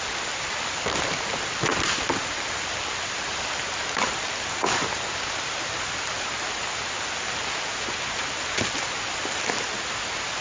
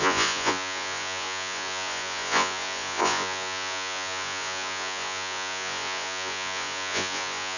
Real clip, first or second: first